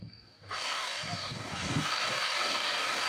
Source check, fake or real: fake